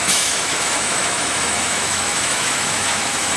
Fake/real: fake